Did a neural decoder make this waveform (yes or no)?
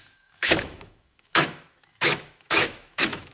yes